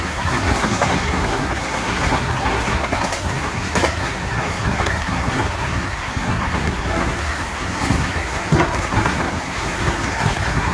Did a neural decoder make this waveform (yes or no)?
yes